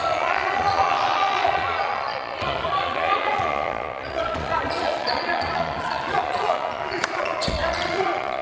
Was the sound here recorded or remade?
remade